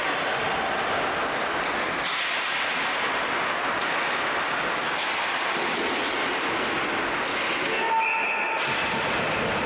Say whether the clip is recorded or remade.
recorded